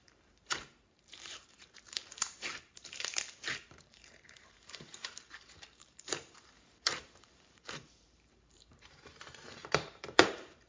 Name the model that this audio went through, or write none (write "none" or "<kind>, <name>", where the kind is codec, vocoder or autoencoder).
vocoder, BigVGAN v2